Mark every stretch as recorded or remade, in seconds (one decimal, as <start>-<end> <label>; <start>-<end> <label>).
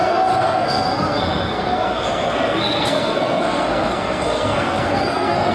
0.0-5.5 remade